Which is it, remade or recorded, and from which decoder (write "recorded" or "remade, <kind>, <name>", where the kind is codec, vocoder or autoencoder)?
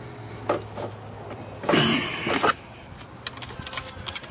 recorded